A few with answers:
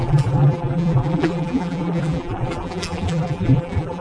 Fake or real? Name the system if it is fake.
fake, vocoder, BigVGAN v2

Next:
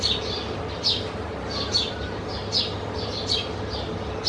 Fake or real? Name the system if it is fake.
real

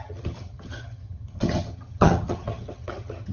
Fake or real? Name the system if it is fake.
fake, vocoder, HiFi-GAN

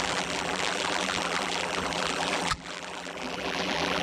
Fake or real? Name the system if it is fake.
fake, vocoder, BigVGAN v2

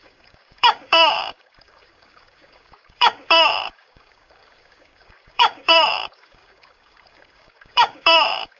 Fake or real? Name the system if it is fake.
fake, codec, DAC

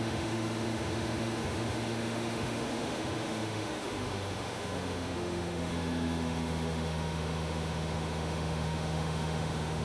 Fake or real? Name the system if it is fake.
fake, autoencoder, DAC-VAE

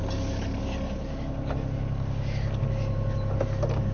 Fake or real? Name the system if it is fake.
real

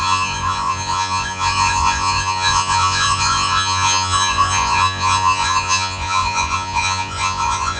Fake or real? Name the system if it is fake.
fake, vocoder, Vocos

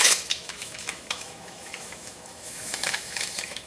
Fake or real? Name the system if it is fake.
fake, autoencoder, DAC-VAE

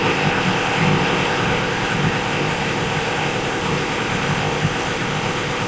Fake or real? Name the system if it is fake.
fake, codec, ZipCodec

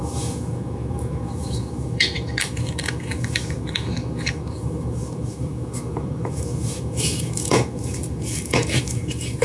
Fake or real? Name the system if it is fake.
fake, autoencoder, DAC-VAE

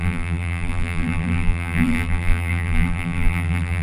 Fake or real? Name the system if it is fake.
fake, vocoder, BigVGAN v2